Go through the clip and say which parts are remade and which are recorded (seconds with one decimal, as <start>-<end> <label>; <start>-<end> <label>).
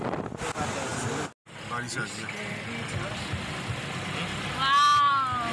0.0-5.5 recorded